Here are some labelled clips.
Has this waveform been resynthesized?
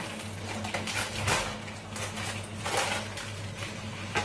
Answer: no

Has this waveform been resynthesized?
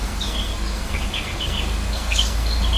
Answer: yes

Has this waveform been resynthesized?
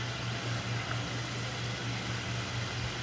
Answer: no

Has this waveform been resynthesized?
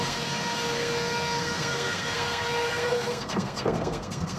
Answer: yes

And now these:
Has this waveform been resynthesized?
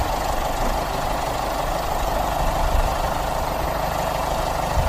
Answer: no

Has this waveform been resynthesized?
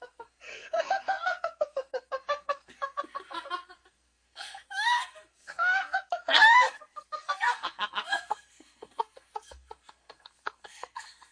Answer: yes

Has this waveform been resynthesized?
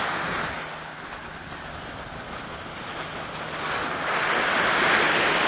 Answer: no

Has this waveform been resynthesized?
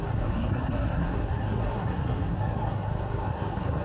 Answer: yes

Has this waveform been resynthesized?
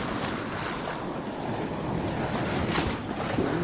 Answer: no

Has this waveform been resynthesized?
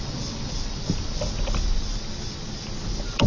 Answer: no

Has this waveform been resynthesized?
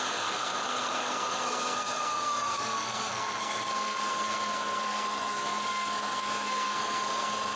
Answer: yes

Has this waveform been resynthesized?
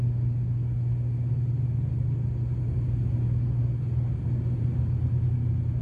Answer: no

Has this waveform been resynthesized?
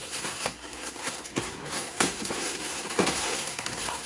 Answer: yes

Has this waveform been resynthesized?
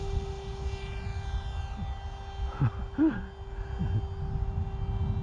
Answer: no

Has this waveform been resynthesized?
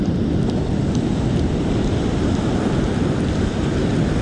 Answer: no